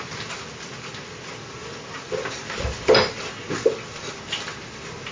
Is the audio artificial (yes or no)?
no